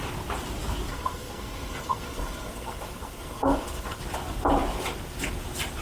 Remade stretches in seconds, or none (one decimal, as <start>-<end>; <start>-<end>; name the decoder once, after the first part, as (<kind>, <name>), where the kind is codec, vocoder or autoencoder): 0.9-4.0 (codec, SNAC)